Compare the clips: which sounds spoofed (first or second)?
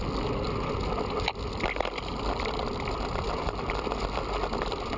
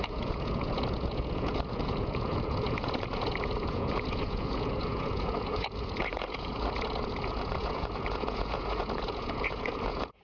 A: second